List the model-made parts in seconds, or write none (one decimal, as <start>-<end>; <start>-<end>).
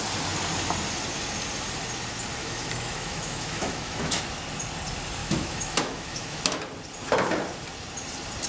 2.4-4.2; 5.2-6.4